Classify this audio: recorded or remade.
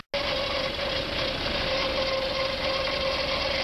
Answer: recorded